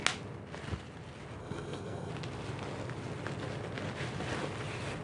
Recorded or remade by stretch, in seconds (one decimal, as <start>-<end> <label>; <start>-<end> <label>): 0.0-1.4 recorded; 1.4-2.1 remade; 2.1-5.0 recorded